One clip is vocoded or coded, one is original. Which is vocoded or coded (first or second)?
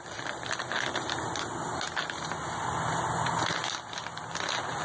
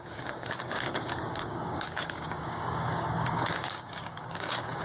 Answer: second